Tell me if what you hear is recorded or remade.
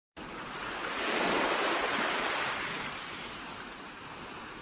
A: remade